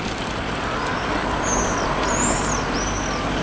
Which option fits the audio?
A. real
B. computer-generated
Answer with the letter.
A